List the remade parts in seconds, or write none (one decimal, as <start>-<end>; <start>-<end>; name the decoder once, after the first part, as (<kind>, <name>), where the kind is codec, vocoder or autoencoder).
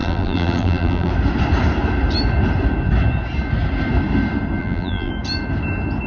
0.0-1.1 (vocoder, BigVGAN v2); 4.6-5.1